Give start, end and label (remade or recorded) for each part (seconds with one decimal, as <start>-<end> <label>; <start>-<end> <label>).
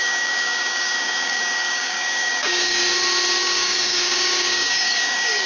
0.0-2.8 remade; 2.8-3.4 recorded; 3.4-5.5 remade